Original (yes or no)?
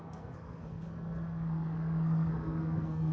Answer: no